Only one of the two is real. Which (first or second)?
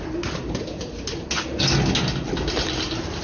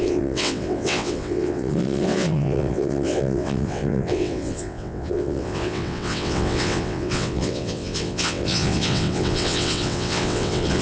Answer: first